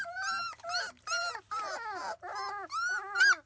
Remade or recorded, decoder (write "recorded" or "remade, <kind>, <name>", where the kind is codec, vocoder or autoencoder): recorded